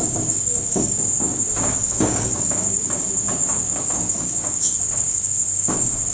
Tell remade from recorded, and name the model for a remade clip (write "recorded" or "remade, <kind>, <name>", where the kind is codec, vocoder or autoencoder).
remade, codec, DAC